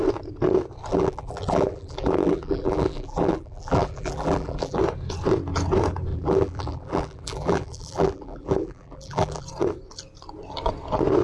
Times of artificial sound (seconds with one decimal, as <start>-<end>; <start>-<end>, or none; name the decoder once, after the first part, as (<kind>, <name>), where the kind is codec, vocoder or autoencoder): 0.9-4.8 (vocoder, BigVGAN v2); 6.1-9.4